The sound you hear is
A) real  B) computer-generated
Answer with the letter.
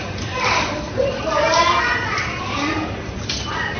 A